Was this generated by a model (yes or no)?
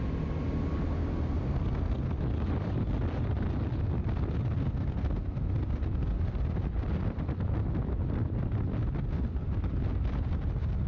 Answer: no